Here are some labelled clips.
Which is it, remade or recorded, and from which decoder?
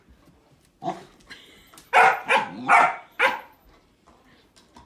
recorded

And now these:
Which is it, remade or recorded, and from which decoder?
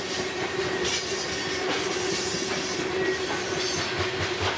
recorded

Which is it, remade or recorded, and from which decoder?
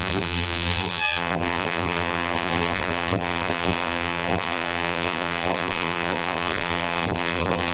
remade, vocoder, BigVGAN v2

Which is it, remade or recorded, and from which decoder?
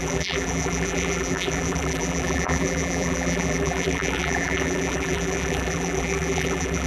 remade, vocoder, BigVGAN v2